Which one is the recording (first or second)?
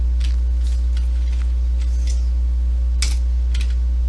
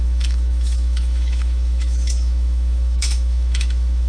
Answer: first